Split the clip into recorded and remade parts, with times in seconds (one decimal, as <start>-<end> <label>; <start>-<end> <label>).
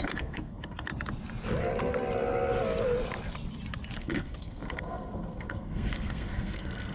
0.0-0.9 remade; 0.9-4.0 recorded; 4.0-6.9 remade